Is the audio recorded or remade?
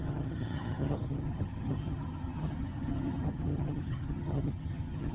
remade